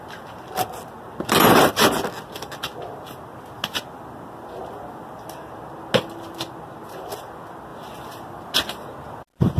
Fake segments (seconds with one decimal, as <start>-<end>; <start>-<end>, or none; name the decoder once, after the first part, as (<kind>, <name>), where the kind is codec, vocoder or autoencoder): none